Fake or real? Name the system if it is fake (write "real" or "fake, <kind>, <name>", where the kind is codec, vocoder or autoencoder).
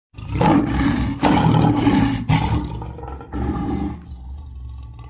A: real